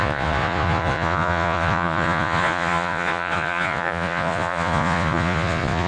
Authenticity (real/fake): fake